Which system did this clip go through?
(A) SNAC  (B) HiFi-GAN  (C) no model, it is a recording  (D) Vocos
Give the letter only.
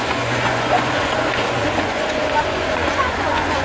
D